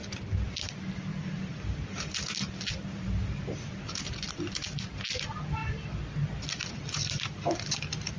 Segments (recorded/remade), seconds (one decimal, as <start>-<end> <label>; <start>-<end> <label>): 0.0-0.7 recorded; 0.7-1.1 remade; 1.1-4.3 recorded; 4.3-5.6 remade; 5.6-6.7 recorded; 6.7-8.2 remade